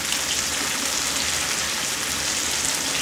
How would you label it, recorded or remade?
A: recorded